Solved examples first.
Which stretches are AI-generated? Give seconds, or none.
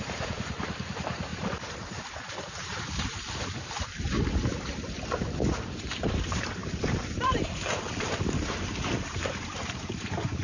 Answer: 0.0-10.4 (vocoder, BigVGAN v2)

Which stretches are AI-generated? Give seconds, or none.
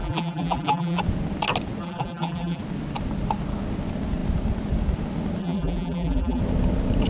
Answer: 0.0-1.0 (vocoder, BigVGAN v2); 1.8-2.6; 5.4-6.4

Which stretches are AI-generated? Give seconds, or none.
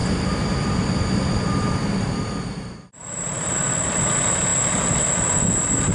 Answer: 0.0-3.5 (vocoder, BigVGAN v2)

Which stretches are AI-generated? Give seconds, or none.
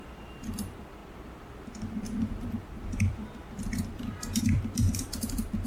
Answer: 0.0-5.7 (vocoder, BigVGAN v2)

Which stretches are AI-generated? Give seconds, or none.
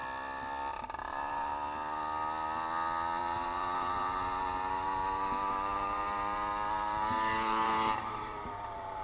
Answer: 1.1-1.5 (vocoder, BigVGAN v2); 3.2-9.0